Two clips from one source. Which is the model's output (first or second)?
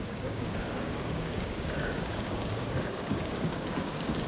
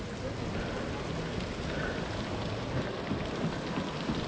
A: first